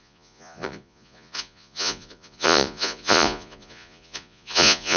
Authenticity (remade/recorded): remade